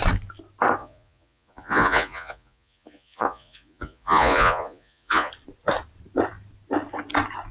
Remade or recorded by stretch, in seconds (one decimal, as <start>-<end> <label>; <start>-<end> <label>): 0.0-0.8 recorded; 0.8-5.3 remade; 5.3-7.5 recorded